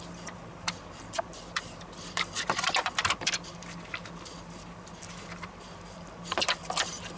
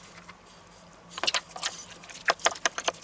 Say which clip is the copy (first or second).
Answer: first